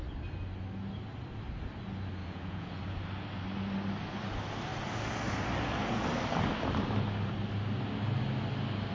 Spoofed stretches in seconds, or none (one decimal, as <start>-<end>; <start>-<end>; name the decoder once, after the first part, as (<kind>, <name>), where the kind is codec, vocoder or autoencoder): 2.2-2.8 (vocoder, Vocos)